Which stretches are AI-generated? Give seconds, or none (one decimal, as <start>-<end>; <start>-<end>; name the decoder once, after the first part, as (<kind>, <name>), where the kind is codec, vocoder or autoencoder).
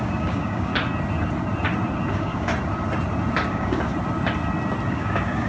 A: 0.0-0.7 (codec, DAC); 2.1-2.5; 3.5-3.9; 4.9-5.5